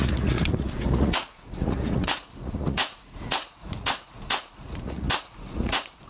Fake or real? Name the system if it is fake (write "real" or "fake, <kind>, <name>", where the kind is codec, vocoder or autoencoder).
fake, vocoder, Vocos